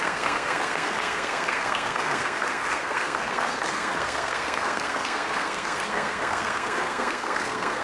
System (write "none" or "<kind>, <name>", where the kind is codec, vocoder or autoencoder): codec, SNAC